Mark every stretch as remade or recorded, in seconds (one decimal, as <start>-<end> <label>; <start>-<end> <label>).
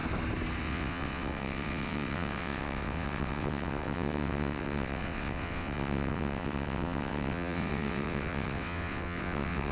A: 0.0-0.6 recorded; 0.6-9.7 remade